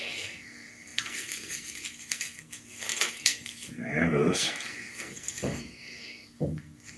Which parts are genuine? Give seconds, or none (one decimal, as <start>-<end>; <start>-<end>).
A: none